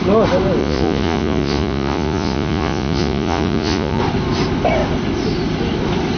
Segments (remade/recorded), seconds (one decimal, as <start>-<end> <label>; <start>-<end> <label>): 0.0-0.6 recorded; 0.6-4.0 remade; 4.0-6.2 recorded